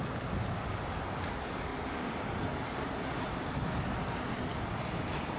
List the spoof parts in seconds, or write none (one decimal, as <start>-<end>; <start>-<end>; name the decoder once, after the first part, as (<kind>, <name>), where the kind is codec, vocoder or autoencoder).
none